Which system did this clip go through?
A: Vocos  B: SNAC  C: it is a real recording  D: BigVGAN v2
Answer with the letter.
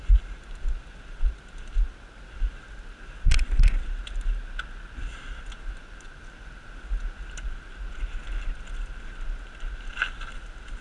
C